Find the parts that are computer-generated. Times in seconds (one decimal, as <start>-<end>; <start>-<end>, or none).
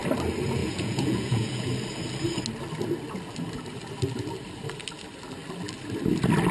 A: 0.6-1.7